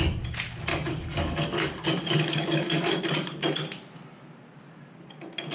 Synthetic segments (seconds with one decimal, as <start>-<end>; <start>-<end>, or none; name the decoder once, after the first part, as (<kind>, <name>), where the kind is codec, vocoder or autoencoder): 0.7-3.0 (codec, DAC)